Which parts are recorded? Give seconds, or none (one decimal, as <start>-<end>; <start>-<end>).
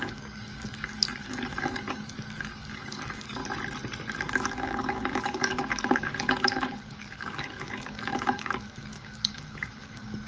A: 3.4-4.2